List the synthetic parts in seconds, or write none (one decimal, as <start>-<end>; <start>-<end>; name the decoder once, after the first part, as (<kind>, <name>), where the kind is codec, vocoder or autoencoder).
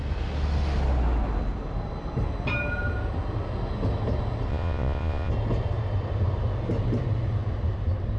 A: 4.5-5.3 (vocoder, Vocos)